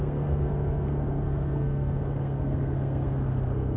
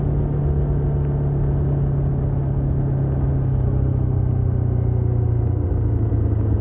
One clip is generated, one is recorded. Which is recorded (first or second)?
second